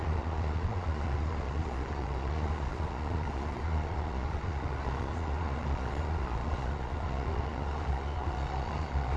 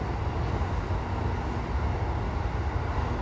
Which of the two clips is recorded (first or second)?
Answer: second